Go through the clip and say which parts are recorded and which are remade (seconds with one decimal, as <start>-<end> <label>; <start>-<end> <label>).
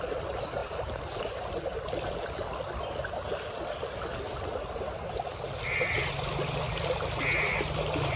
0.0-0.6 recorded; 0.6-1.2 remade; 1.2-8.2 recorded